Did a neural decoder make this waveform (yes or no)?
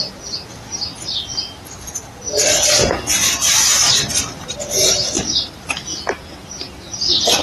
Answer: no